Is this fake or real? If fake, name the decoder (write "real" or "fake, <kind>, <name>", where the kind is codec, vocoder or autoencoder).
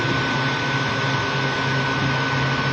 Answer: real